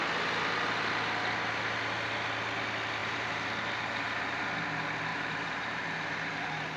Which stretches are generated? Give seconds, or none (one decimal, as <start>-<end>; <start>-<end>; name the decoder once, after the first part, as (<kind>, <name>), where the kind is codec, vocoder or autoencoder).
3.0-4.4 (vocoder, BigVGAN v2); 5.1-6.8

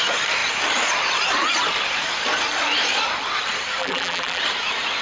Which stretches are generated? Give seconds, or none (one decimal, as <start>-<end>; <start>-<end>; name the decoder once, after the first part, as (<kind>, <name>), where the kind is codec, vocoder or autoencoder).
3.8-4.4 (vocoder, BigVGAN v2)

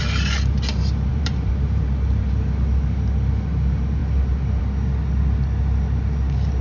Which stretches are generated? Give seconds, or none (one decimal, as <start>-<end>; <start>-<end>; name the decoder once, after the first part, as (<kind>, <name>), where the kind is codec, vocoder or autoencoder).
1.1-2.3 (vocoder, BigVGAN v2)

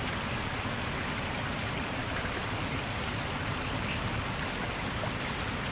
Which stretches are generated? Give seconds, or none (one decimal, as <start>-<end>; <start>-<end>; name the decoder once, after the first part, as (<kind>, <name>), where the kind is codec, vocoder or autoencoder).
none

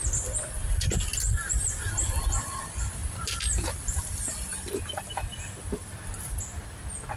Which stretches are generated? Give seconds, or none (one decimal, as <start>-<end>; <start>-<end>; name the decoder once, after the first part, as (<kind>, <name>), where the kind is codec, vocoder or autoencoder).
none

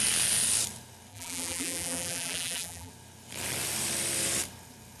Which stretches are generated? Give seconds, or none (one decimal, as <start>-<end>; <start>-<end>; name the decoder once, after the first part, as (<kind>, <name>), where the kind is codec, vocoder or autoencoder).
1.1-2.9 (vocoder, BigVGAN v2)